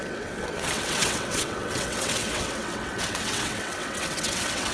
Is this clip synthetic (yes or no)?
yes